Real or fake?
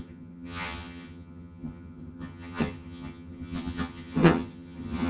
fake